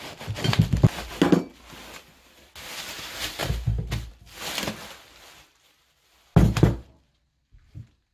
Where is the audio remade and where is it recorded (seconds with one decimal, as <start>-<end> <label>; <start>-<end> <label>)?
0.0-8.1 recorded